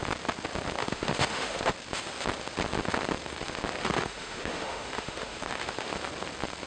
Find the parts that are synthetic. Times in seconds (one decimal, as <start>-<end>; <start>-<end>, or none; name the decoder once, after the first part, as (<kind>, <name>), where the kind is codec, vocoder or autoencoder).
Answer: 0.8-1.7 (autoencoder, DAC-VAE); 3.8-5.9

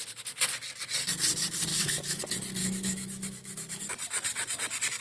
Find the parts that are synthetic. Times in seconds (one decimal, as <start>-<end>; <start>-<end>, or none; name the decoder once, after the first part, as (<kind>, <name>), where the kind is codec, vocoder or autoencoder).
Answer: 1.7-2.2 (autoencoder, DAC-VAE); 2.6-3.8